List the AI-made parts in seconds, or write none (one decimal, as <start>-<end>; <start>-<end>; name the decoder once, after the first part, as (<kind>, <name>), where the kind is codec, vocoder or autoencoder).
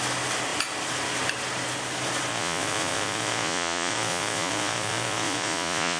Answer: 2.3-6.0 (vocoder, Vocos)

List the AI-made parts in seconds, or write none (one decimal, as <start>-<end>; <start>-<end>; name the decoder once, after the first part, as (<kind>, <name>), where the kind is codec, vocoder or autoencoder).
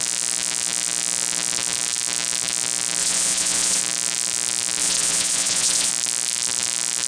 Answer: 3.0-3.8 (vocoder, Vocos); 4.8-5.9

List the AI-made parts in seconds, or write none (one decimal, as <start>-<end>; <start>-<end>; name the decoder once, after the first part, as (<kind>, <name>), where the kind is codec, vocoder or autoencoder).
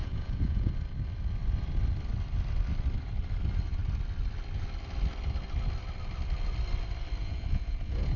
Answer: 0.0-0.7 (vocoder, Vocos); 7.2-8.2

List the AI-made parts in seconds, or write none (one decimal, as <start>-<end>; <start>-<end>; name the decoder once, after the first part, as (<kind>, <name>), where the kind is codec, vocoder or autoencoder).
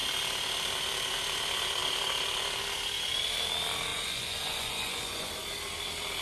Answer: 3.9-5.3 (vocoder, Vocos)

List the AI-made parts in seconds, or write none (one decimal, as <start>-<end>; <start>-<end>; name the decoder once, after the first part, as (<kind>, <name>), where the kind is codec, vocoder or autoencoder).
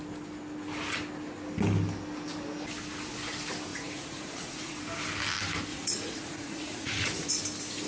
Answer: 3.7-4.8 (vocoder, Vocos); 5.7-7.3